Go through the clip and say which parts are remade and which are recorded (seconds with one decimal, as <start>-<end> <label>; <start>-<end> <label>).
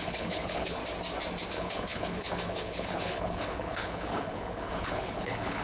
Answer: 0.0-0.8 remade; 0.8-1.5 recorded; 1.5-5.6 remade